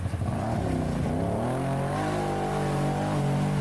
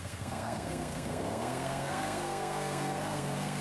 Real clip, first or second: first